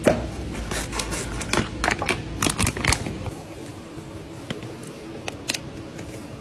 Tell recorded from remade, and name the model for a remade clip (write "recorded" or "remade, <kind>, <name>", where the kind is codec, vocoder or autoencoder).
recorded